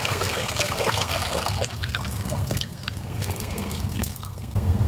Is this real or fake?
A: fake